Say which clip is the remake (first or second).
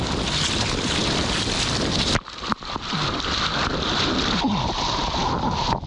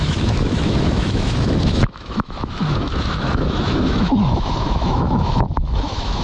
second